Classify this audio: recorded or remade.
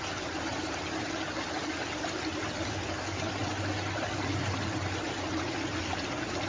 recorded